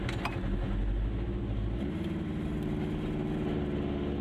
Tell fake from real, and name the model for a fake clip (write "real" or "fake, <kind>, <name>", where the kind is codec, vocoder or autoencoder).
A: real